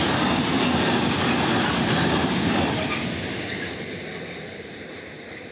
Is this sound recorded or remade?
recorded